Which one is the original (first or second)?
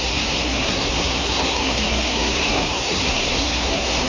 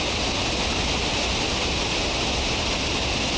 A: second